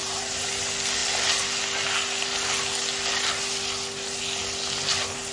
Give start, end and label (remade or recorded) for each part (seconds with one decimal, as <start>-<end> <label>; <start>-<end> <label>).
0.0-0.5 remade; 0.5-5.3 recorded